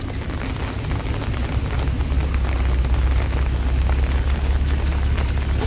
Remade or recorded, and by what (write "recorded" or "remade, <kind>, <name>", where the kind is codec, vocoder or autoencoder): recorded